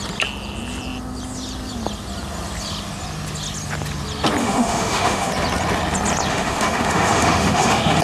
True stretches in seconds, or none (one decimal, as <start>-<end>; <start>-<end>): 0.0-4.4; 5.3-6.3